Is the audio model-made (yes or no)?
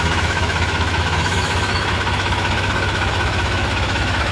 yes